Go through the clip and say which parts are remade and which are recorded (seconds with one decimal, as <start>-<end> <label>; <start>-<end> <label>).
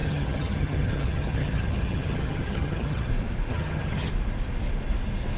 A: 0.0-3.1 remade; 3.1-3.5 recorded; 3.5-4.1 remade; 4.1-5.4 recorded